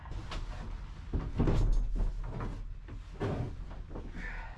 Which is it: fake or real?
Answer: real